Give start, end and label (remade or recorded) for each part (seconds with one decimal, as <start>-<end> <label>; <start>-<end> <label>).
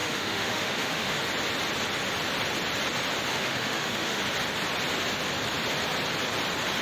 0.0-1.2 remade; 1.2-3.3 recorded; 3.3-4.2 remade; 4.2-6.8 recorded